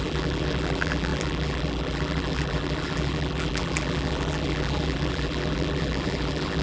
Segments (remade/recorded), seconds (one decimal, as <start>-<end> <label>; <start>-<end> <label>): 0.0-6.6 remade